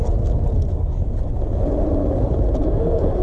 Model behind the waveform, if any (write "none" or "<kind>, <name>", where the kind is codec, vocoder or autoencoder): none